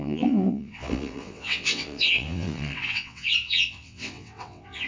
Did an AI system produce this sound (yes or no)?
yes